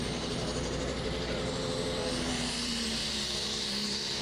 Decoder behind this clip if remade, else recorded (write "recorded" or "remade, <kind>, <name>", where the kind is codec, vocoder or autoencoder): remade, vocoder, BigVGAN v2